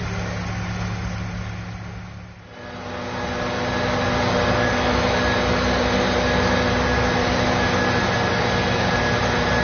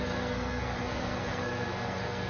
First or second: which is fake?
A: second